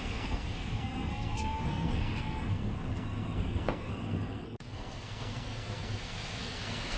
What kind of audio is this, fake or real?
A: fake